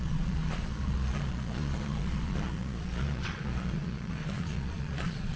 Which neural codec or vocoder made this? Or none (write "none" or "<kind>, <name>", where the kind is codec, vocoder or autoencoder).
vocoder, Vocos